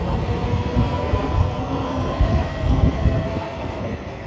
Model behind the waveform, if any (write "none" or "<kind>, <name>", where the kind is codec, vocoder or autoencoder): codec, SNAC